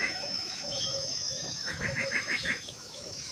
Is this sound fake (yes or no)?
yes